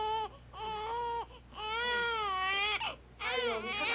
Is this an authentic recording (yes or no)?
yes